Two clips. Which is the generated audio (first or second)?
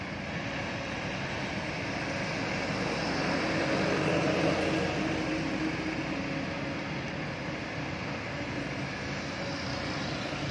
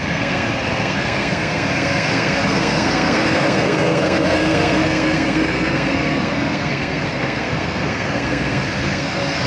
second